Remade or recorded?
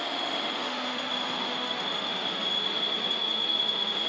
remade